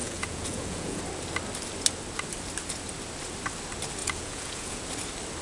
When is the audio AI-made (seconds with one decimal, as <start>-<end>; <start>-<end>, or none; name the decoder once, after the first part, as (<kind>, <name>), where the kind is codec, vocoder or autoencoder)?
0.0-1.0 (vocoder, Vocos); 4.0-4.8